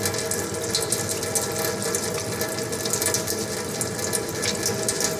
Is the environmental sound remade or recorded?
recorded